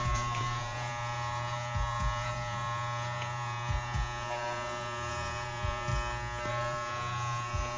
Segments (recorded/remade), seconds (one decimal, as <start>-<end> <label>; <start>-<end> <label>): 0.0-5.9 remade; 5.9-6.5 recorded; 6.5-7.8 remade